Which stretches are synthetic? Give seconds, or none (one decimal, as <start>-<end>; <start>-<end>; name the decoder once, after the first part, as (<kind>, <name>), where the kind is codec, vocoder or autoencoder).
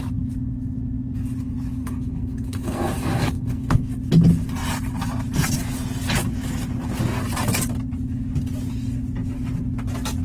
1.8-3.9 (codec, SNAC)